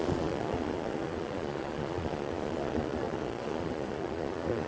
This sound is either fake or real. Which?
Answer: fake